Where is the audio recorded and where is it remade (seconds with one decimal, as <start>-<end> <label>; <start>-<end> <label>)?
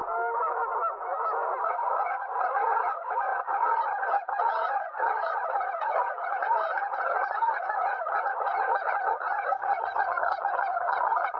0.0-1.6 recorded; 1.6-11.4 remade